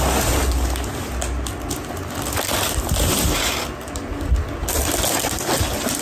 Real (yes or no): yes